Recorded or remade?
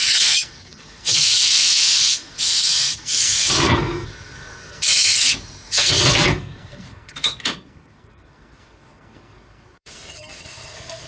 remade